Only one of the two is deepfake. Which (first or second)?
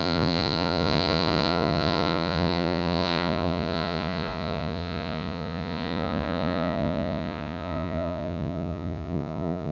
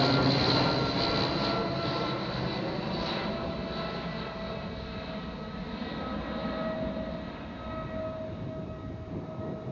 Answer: first